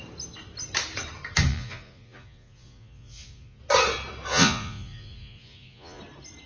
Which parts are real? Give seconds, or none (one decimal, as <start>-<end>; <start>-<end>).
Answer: 0.0-1.5; 3.6-4.3; 6.0-6.5